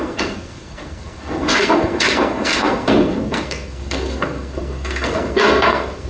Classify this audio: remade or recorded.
remade